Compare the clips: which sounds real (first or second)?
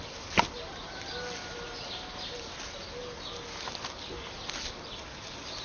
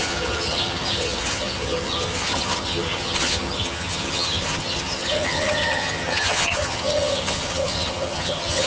first